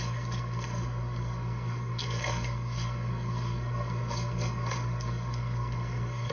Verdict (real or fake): fake